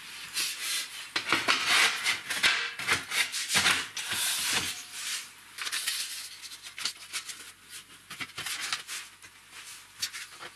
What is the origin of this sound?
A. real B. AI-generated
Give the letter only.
A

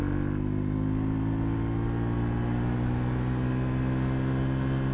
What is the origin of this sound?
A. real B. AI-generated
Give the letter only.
A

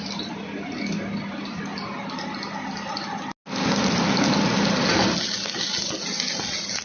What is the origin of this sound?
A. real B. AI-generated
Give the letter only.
A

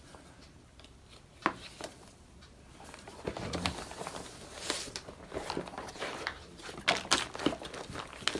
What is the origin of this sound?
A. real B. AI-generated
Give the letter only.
A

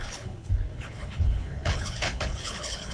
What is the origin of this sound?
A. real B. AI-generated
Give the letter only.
B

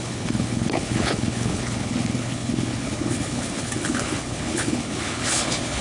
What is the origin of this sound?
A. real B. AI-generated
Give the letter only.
B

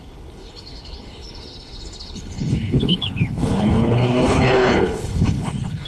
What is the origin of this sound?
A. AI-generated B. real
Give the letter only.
A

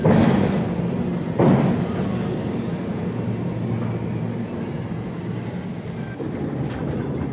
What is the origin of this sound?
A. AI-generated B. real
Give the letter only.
B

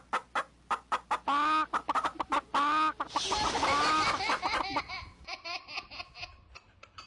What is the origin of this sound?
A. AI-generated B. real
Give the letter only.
B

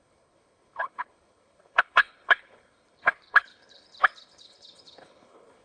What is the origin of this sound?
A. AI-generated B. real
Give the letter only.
A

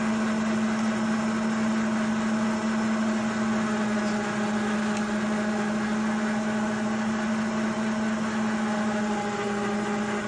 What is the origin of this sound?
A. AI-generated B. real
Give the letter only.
B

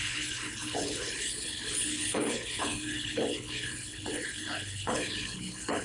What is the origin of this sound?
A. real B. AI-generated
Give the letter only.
B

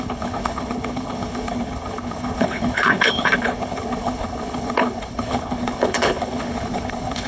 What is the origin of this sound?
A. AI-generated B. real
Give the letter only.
A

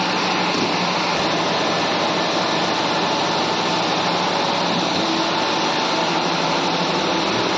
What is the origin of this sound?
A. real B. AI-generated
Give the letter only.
A